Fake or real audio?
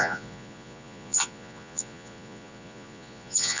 fake